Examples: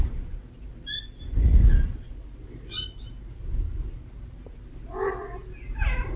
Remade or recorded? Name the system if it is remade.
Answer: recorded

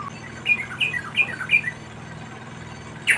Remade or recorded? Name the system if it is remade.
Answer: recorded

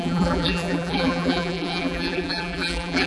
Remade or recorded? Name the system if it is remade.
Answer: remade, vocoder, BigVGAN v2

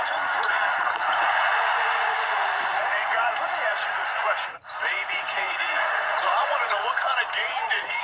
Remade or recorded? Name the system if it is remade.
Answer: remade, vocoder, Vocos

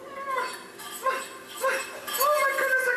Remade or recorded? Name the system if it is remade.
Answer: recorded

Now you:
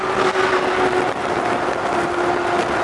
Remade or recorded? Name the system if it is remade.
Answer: recorded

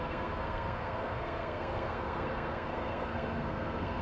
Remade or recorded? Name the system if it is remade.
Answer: remade, codec, SNAC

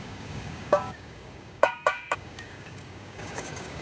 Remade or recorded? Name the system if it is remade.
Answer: remade, codec, DAC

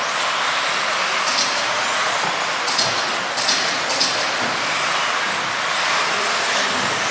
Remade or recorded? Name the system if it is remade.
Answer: recorded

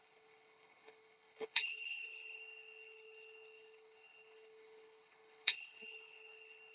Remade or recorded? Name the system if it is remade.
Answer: remade, codec, HILCodec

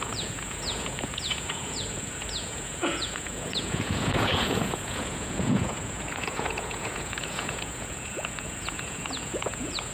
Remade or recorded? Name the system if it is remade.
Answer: remade, vocoder, Vocos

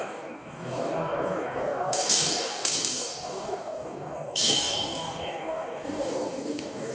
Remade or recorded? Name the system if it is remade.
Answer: remade, codec, DAC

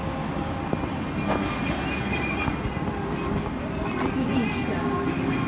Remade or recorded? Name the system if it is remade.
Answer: recorded